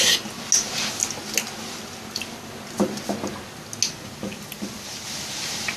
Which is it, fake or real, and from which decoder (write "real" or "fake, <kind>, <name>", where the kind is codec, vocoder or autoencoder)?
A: real